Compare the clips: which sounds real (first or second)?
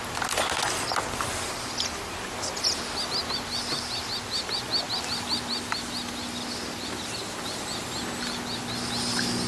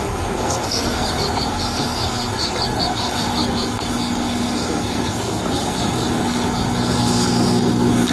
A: first